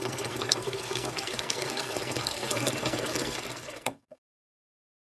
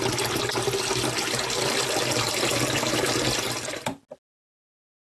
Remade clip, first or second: first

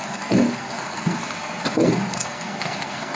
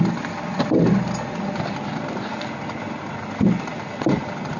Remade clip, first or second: first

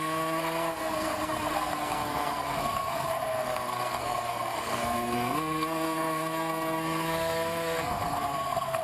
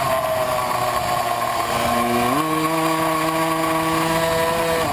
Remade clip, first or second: first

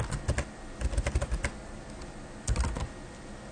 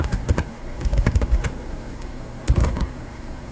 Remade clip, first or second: second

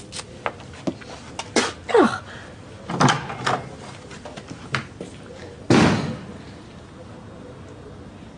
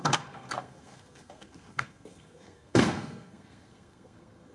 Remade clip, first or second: second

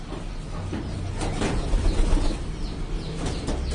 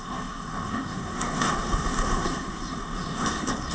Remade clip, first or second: second